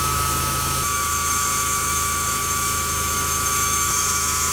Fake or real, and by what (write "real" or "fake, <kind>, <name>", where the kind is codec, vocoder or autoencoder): fake, autoencoder, DAC-VAE